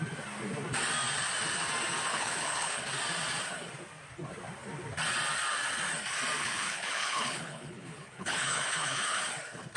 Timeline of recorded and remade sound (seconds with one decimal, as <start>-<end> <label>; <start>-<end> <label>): 0.0-2.1 recorded; 2.1-2.8 remade; 2.8-6.4 recorded; 6.4-9.2 remade; 9.2-9.8 recorded

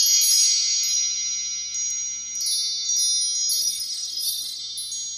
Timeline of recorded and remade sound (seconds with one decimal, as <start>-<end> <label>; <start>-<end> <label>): 0.0-3.6 recorded; 3.6-4.6 remade; 4.6-5.2 recorded